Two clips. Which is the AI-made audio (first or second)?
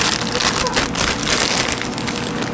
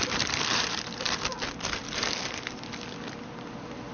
second